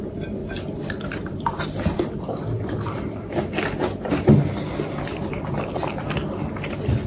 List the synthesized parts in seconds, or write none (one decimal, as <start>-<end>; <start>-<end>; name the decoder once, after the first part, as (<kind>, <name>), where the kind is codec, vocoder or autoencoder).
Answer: 0.4-4.2 (vocoder, BigVGAN v2)